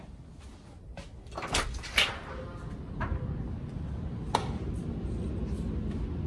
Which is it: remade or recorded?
recorded